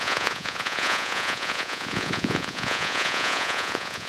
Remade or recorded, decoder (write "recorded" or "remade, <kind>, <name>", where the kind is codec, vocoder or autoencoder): remade, vocoder, Vocos